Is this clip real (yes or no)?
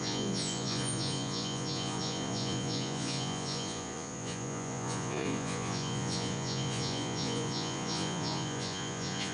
no